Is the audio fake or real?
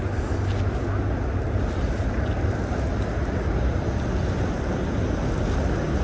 real